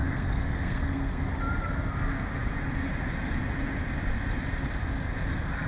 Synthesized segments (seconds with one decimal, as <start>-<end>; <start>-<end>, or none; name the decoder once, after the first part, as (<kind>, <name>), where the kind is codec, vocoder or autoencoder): 0.0-1.2 (codec, SNAC)